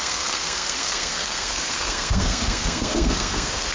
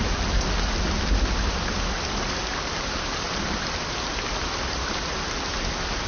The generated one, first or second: first